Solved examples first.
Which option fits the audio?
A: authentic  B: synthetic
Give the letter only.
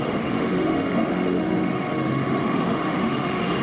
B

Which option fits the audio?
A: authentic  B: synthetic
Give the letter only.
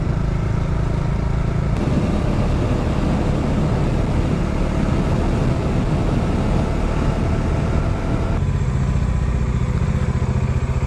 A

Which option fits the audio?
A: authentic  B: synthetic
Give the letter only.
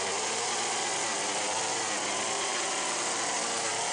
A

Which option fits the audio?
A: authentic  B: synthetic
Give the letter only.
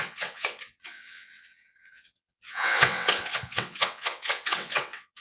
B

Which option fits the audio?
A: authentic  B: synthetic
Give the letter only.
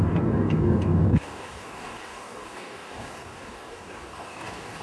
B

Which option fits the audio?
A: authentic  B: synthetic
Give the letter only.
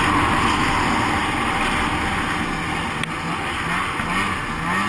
A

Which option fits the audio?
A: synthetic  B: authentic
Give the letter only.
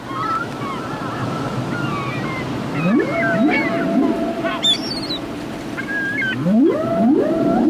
B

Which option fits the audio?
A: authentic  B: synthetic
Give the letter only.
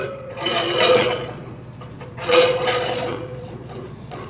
B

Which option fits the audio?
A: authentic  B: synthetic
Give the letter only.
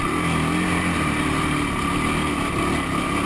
A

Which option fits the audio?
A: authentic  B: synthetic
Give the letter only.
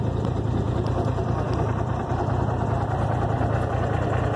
B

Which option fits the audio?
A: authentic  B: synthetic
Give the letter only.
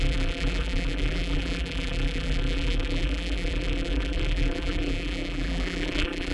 B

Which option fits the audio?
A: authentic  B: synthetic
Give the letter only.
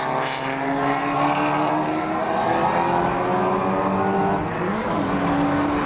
A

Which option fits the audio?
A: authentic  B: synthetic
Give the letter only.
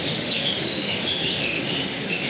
B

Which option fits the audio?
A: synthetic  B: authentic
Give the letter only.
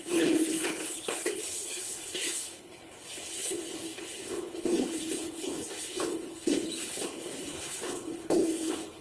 A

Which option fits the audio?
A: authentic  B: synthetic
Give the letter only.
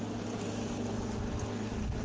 A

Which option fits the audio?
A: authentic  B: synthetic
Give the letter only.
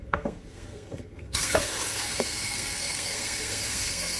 B